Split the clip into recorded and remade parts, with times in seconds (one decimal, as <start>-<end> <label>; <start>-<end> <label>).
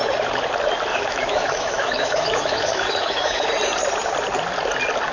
0.0-0.9 recorded; 0.9-3.5 remade; 3.5-5.1 recorded